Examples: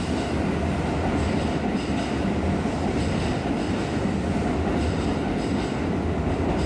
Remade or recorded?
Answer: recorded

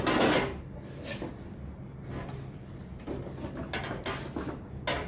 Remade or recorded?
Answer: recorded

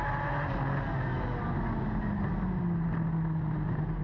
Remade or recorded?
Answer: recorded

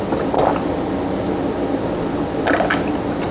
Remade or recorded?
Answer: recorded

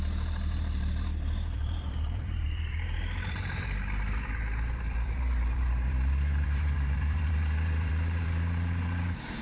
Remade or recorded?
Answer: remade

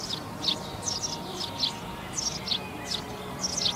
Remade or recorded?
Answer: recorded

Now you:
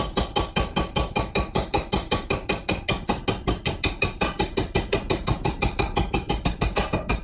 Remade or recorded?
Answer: recorded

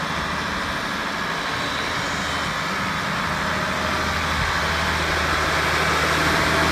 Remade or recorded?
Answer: recorded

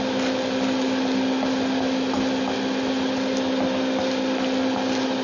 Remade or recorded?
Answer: recorded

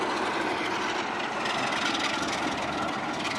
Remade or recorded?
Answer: recorded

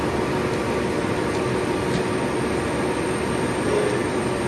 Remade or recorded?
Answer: recorded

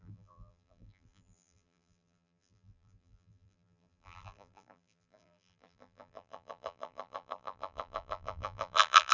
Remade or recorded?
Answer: remade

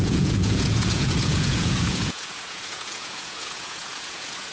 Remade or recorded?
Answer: remade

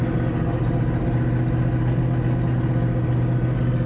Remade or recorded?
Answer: recorded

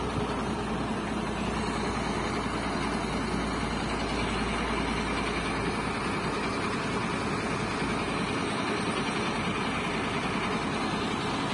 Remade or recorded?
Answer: recorded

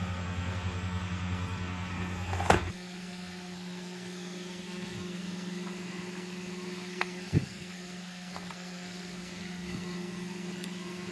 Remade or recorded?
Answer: remade